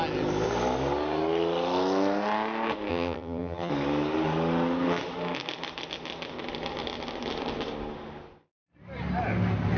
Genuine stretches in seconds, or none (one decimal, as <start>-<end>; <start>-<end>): 0.0-2.9; 3.7-9.8